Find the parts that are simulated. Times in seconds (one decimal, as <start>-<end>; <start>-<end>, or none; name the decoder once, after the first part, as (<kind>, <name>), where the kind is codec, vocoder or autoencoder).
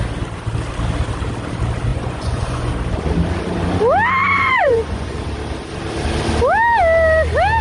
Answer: 1.9-2.7 (vocoder, Vocos); 4.2-5.2